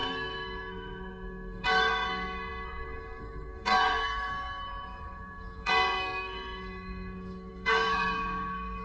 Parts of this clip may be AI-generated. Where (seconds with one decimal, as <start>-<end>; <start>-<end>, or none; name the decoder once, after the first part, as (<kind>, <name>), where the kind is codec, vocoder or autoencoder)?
0.0-8.8 (codec, SNAC)